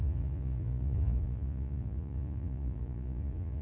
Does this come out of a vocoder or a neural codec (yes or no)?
yes